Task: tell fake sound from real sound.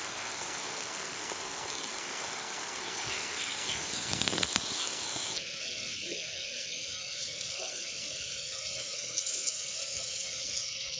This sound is fake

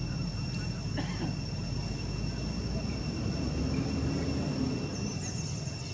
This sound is real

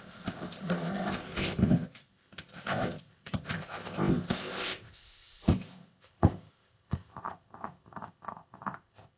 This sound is fake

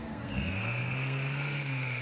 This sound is fake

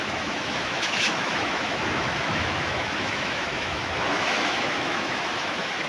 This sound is fake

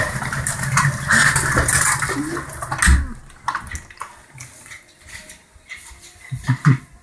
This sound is real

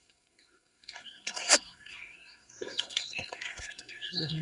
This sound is fake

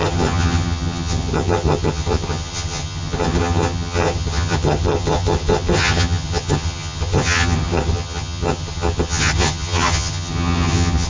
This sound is fake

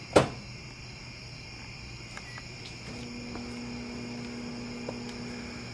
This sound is real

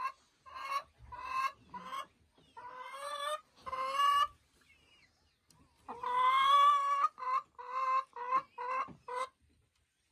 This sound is real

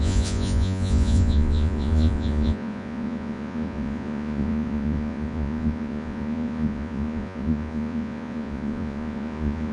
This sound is fake